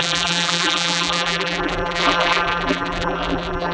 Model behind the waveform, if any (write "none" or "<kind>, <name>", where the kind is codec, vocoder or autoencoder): vocoder, BigVGAN v2